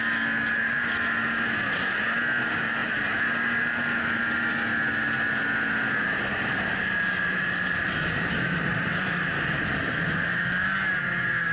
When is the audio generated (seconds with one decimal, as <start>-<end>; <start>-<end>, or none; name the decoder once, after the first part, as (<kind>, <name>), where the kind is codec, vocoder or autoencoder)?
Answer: 6.3-10.4 (vocoder, BigVGAN v2)